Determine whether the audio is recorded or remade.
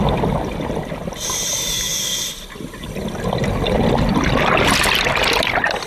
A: recorded